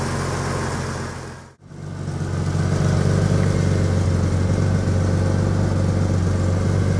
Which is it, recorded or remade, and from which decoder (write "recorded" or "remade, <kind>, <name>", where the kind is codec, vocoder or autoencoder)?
recorded